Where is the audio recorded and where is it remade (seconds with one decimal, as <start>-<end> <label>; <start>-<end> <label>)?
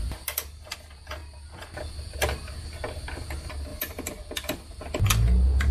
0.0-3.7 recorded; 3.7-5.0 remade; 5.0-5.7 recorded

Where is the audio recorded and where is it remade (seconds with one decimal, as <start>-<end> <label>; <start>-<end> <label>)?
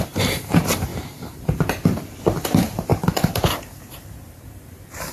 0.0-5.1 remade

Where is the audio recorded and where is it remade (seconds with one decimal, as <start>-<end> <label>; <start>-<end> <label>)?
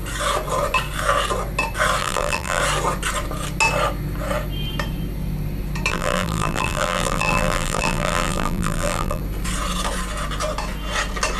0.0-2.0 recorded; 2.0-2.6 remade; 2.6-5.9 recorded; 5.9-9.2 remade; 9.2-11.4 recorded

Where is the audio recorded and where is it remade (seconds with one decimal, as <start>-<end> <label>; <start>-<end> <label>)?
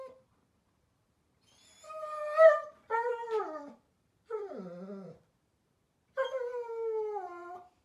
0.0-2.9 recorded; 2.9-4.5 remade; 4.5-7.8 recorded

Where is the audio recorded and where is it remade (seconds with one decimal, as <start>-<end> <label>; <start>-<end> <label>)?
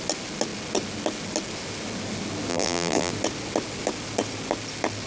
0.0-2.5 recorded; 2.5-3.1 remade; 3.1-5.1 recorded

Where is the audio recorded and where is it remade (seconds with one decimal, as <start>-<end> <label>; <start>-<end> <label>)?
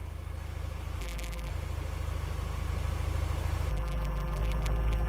0.0-1.0 recorded; 1.0-1.5 remade; 1.5-3.7 recorded; 3.7-5.1 remade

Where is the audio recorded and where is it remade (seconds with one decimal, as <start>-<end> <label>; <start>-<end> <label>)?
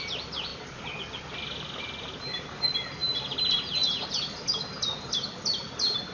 0.0-6.1 recorded